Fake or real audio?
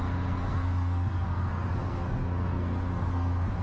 fake